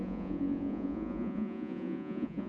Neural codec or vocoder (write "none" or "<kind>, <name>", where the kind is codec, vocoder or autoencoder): vocoder, Vocos